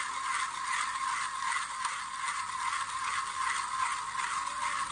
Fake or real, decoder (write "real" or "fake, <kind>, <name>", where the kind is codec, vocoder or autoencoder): real